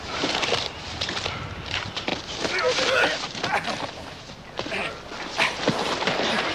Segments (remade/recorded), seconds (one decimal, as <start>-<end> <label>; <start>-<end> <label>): 0.0-2.1 remade; 2.1-6.0 recorded; 6.0-6.5 remade